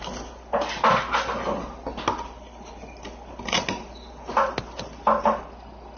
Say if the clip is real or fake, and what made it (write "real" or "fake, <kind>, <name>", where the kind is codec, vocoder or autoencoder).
real